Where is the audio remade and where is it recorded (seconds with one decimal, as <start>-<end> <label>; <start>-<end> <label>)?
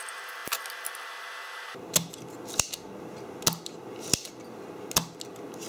0.0-5.7 recorded